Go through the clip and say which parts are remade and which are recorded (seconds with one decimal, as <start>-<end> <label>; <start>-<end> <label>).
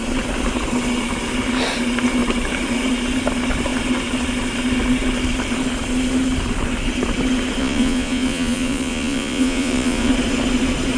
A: 0.0-7.6 recorded; 7.6-10.1 remade; 10.1-11.0 recorded